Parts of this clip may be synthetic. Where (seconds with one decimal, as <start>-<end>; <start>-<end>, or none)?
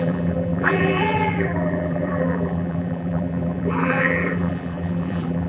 0.0-5.5